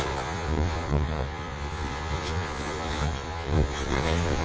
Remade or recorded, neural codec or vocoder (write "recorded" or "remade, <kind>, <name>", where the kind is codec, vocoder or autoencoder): remade, vocoder, Vocos